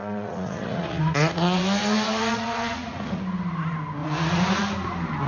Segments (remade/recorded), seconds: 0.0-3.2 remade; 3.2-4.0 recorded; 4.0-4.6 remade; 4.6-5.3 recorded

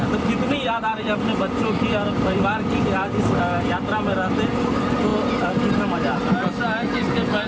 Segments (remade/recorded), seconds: 0.0-7.5 recorded

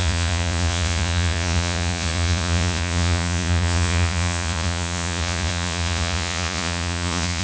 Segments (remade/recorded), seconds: 0.0-7.4 remade

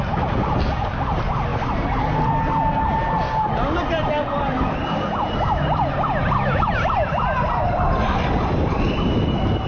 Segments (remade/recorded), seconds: 0.0-9.7 recorded

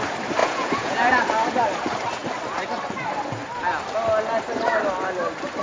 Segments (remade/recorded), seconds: 0.0-0.4 recorded; 0.4-1.1 remade; 1.1-5.6 recorded

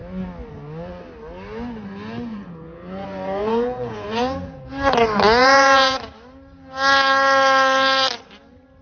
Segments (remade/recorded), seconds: 0.0-2.3 recorded; 2.3-4.7 remade; 4.7-5.4 recorded; 5.4-6.0 remade; 6.0-8.8 recorded

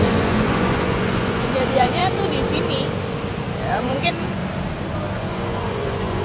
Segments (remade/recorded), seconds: 0.0-2.0 remade; 2.0-3.7 recorded; 3.7-4.4 remade; 4.4-5.1 recorded; 5.1-6.2 remade